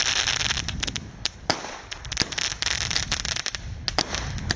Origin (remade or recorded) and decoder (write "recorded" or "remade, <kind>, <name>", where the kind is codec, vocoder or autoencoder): recorded